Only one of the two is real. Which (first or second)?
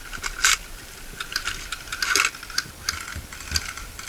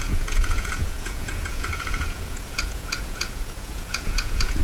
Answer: first